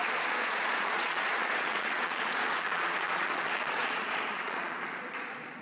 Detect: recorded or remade remade